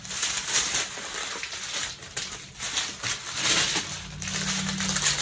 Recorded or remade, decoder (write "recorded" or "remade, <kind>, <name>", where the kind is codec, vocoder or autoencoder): recorded